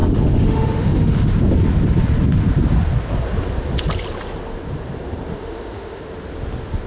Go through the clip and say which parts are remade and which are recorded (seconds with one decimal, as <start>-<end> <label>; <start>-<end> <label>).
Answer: 0.0-1.3 remade; 1.3-5.3 recorded; 5.3-6.0 remade; 6.0-6.9 recorded